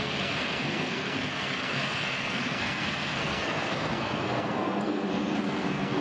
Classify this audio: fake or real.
fake